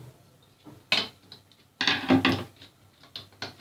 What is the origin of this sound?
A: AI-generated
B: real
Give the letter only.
B